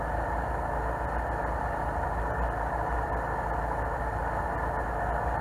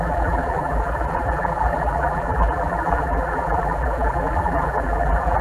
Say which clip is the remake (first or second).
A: second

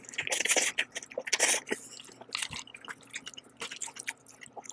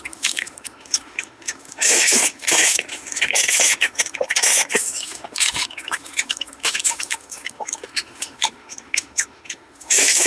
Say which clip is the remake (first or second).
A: second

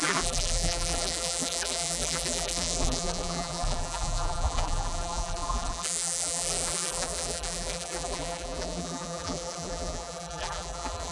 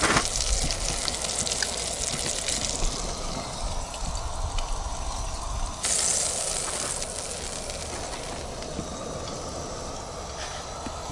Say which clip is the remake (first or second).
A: first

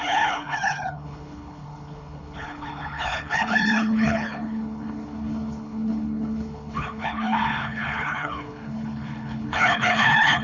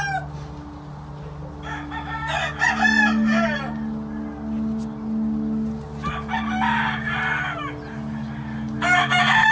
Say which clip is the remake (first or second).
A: first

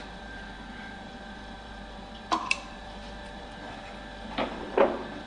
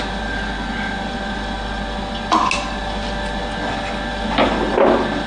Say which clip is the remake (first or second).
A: first